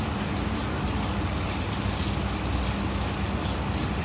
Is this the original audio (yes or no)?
yes